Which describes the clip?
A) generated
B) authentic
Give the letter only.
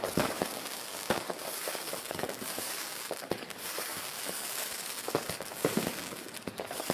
A